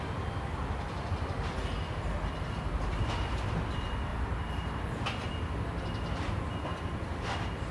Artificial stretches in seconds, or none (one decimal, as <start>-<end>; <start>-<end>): none